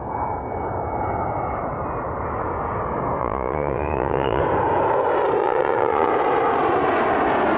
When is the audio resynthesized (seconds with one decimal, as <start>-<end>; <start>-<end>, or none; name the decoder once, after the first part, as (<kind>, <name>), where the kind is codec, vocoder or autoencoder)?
3.2-4.4 (vocoder, Vocos); 5.4-6.1